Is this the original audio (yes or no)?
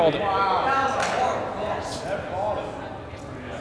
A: yes